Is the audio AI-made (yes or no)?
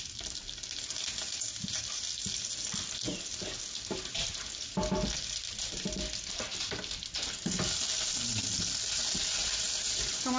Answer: no